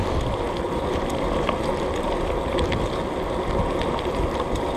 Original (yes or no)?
yes